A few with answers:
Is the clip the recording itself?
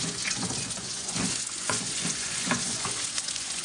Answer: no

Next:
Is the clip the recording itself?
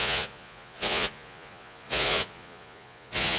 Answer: no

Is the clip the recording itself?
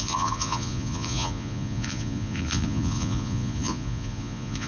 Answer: no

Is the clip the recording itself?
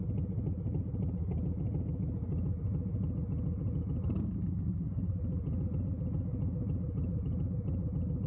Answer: yes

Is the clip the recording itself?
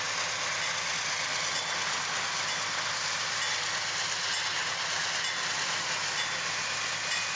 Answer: yes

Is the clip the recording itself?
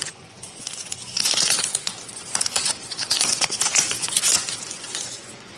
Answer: no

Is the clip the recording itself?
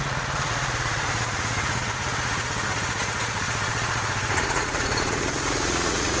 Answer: no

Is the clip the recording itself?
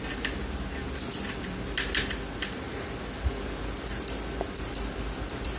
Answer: yes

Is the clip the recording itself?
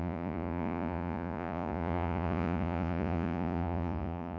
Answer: no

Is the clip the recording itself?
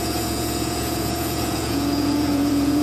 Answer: no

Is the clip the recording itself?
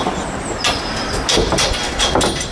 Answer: yes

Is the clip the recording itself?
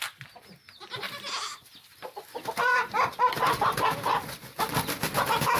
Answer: yes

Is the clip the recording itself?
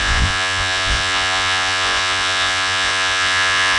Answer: no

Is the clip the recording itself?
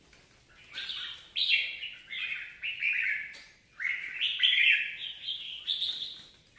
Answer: yes